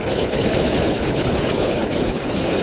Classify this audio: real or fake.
fake